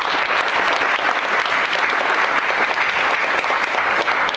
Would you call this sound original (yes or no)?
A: yes